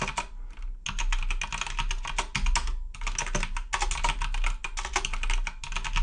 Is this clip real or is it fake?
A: real